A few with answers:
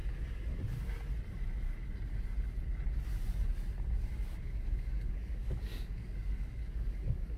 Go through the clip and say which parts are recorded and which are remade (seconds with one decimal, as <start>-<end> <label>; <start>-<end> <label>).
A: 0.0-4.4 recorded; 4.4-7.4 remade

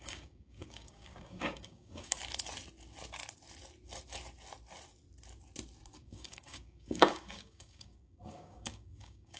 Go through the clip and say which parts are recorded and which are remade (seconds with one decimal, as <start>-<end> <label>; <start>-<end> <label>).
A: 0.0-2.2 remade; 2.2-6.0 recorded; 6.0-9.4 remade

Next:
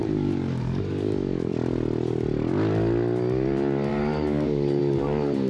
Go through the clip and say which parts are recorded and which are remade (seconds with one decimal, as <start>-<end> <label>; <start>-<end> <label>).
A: 0.0-1.5 remade; 1.5-3.9 recorded; 3.9-4.8 remade; 4.8-5.5 recorded

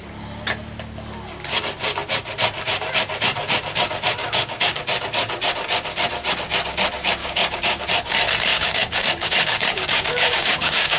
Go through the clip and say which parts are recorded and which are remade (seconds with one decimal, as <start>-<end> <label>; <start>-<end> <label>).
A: 0.0-4.2 recorded; 4.2-4.8 remade; 4.8-7.2 recorded; 7.2-7.8 remade; 7.8-8.5 recorded; 8.5-11.0 remade

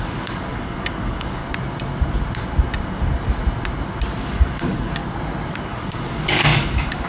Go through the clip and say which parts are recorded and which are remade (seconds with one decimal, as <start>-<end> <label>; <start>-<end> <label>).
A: 0.0-1.4 remade; 1.4-4.2 recorded; 4.2-5.0 remade; 5.0-5.5 recorded; 5.5-7.1 remade

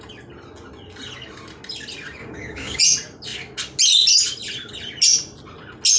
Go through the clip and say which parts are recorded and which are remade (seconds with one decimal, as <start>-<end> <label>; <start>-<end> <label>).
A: 0.0-2.2 recorded; 2.2-2.8 remade; 2.8-6.0 recorded

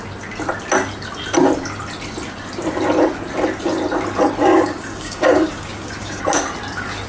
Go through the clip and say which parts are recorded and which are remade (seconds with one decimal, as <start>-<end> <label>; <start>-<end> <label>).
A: 0.0-4.4 recorded; 4.4-6.2 remade; 6.2-7.1 recorded

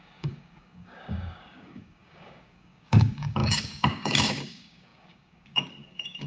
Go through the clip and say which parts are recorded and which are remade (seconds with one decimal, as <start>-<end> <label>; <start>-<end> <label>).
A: 0.0-6.3 remade